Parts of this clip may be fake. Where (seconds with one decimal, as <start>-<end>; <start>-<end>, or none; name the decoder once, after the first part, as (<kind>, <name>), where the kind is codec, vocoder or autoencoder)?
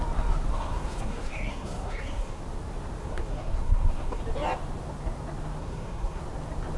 0.5-2.4 (codec, SNAC); 3.0-4.2; 5.6-6.2